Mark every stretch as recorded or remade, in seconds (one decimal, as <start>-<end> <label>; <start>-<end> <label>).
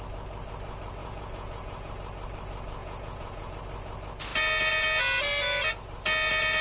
0.0-1.0 recorded; 1.0-1.9 remade; 1.9-2.8 recorded; 2.8-3.5 remade; 3.5-6.6 recorded